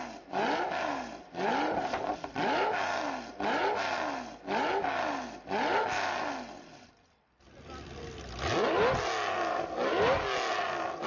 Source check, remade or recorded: recorded